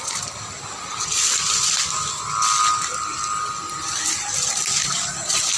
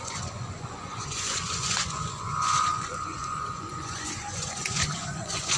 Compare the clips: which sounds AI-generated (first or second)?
second